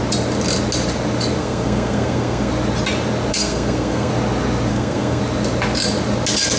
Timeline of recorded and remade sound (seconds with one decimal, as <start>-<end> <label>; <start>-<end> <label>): 0.0-1.4 recorded; 1.4-2.5 remade; 2.5-3.3 recorded; 3.3-4.1 remade; 4.1-4.7 recorded; 4.7-5.2 remade; 5.2-6.6 recorded